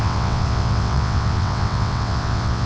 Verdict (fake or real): fake